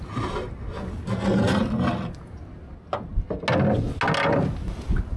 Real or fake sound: real